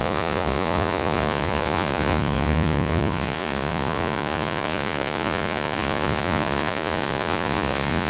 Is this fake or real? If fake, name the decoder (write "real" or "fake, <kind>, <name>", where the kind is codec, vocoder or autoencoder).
fake, vocoder, Vocos